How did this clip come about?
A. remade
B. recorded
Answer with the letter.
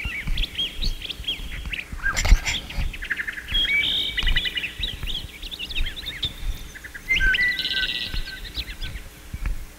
B